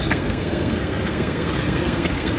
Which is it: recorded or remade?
remade